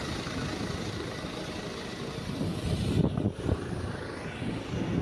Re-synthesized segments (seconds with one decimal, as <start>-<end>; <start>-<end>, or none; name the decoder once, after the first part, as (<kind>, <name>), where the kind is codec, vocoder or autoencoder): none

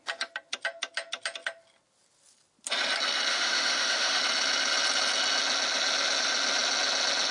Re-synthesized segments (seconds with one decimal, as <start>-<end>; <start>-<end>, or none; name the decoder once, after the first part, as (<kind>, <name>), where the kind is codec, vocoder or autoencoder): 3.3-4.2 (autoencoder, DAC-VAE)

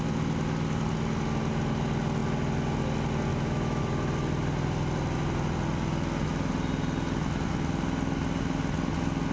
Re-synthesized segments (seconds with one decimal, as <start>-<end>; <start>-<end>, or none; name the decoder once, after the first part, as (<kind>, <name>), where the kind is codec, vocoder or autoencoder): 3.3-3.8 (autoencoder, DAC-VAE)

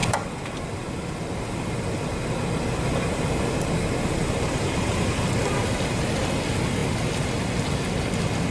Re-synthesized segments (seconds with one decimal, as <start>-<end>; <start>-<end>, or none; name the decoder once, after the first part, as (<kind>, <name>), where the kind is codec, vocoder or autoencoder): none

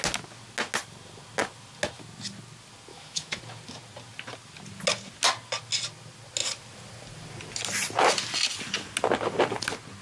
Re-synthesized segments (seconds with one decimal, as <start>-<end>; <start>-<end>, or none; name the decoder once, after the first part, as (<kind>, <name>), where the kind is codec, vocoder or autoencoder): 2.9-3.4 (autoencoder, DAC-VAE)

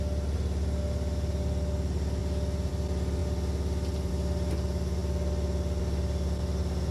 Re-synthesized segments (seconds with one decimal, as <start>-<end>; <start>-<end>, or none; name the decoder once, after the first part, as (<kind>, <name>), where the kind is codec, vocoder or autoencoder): none